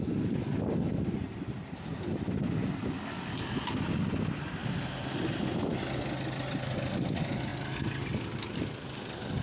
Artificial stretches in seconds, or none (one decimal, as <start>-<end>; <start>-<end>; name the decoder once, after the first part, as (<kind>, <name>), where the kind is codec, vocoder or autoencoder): none